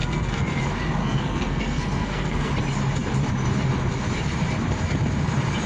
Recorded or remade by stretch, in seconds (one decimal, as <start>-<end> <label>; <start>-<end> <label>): 0.0-0.6 remade; 0.6-1.0 recorded; 1.0-2.5 remade; 2.5-5.7 recorded